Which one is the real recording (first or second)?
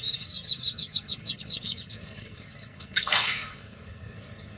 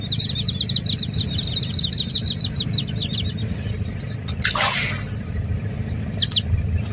second